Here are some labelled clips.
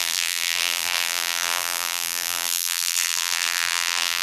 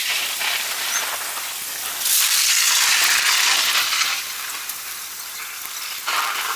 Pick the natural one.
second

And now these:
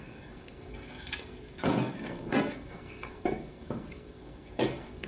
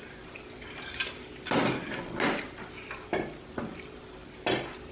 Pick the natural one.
second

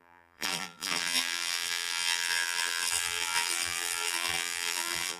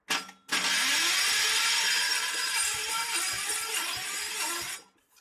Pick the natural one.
second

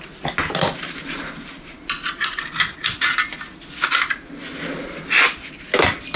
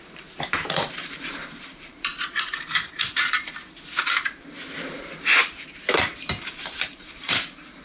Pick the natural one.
first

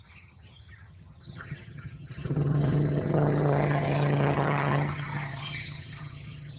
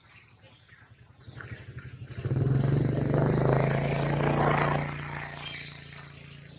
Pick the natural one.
second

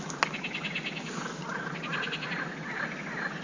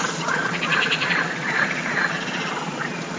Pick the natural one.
first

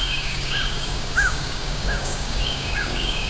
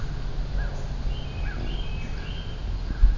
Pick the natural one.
second